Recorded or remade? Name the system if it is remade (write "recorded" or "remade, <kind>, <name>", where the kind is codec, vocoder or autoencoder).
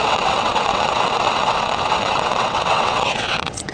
remade, vocoder, WaveNeXt